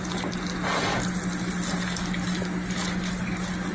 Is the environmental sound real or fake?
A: real